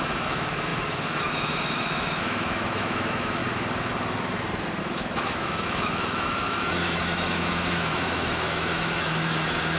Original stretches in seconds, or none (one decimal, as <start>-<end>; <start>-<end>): 3.4-4.8